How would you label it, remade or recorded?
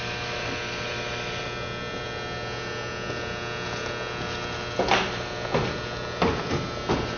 recorded